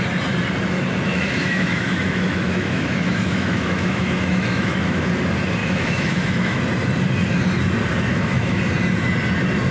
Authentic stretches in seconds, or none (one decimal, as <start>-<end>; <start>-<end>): 0.0-1.1; 5.1-5.6; 6.6-8.1; 8.6-9.7